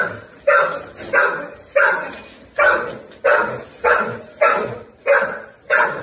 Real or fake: real